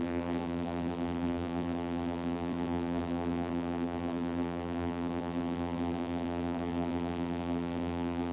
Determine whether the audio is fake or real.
fake